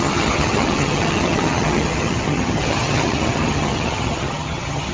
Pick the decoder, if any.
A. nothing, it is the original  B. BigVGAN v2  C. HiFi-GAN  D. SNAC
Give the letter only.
C